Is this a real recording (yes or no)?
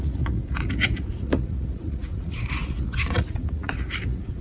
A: no